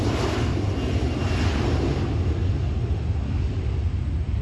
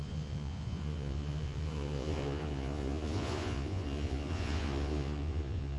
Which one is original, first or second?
first